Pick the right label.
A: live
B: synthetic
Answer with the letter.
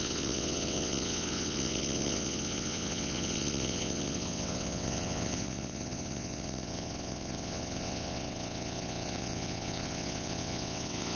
B